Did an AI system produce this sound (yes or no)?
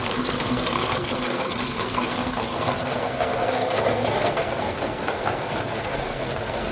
yes